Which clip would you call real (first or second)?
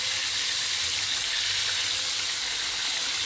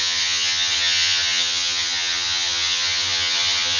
first